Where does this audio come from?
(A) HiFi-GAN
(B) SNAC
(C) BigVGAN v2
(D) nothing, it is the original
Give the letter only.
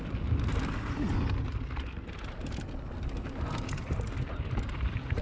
D